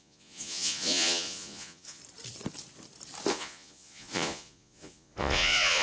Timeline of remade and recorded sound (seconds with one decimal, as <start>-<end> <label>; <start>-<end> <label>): 0.0-2.0 remade; 2.0-3.3 recorded; 3.3-5.8 remade